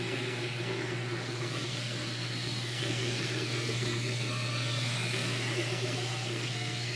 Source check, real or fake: fake